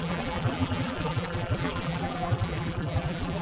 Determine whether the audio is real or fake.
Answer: fake